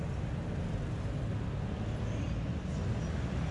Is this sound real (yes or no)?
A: yes